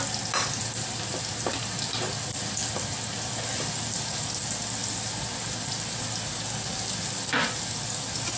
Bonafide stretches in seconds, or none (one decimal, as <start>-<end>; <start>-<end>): 0.0-8.4